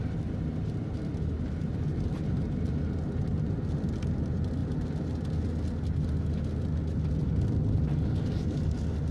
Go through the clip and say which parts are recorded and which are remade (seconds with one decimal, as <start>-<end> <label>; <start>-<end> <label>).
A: 0.0-9.1 recorded